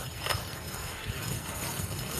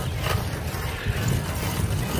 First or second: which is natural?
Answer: second